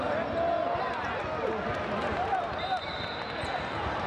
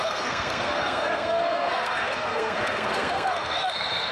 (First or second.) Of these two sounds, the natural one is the first